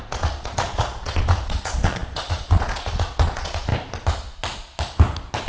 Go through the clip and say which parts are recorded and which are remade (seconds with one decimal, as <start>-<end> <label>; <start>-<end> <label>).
0.0-3.7 remade; 3.7-5.5 recorded